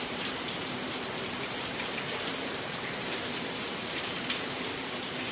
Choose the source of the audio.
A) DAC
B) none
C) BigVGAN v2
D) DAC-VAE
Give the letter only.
C